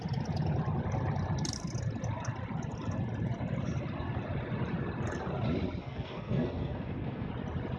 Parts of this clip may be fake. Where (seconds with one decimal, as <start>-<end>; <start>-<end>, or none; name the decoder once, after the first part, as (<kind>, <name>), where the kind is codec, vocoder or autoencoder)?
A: 5.8-7.3 (codec, SNAC)

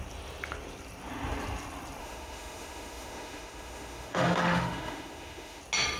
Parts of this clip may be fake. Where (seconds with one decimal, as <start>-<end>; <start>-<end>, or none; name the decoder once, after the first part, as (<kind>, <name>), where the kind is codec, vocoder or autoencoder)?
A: 2.0-5.6 (autoencoder, DAC-VAE)